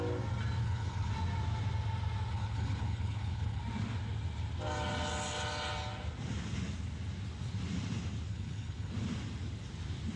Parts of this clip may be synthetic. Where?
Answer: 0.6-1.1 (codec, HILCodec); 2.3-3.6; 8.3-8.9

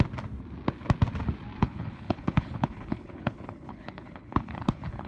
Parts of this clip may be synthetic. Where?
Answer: 1.6-5.1 (codec, HILCodec)

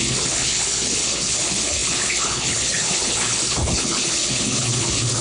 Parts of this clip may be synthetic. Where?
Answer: 0.0-5.2 (codec, HILCodec)

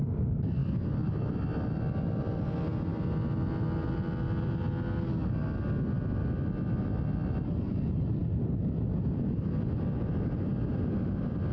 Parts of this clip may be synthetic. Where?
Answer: none

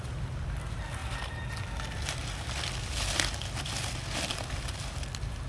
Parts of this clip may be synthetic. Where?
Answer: none